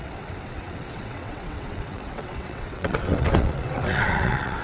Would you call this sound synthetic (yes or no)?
yes